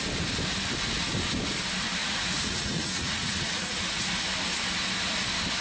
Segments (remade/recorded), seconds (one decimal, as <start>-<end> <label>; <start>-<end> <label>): 0.0-2.0 recorded; 2.0-4.1 remade; 4.1-5.6 recorded